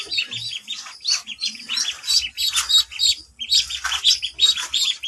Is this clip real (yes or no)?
yes